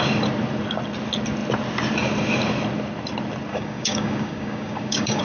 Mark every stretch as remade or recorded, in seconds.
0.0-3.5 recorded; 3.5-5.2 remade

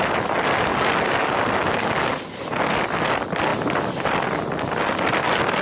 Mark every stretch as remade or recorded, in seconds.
0.0-5.6 recorded

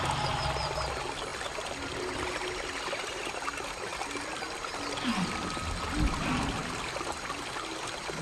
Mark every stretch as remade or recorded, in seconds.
0.0-8.2 recorded

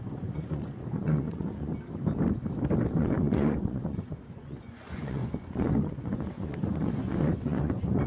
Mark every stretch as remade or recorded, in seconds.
0.0-1.7 remade; 1.7-3.0 recorded; 3.0-8.1 remade

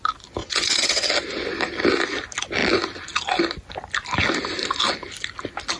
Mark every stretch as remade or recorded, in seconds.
0.0-0.4 recorded; 0.4-1.1 remade; 1.1-5.8 recorded

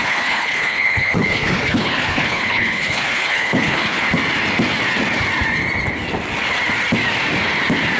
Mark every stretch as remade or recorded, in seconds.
0.0-4.0 remade; 4.0-8.0 recorded